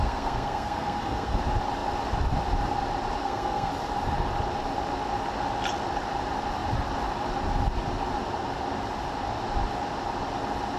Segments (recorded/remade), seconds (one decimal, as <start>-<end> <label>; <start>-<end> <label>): 0.0-1.4 remade; 1.4-3.2 recorded; 3.2-3.7 remade; 3.7-10.8 recorded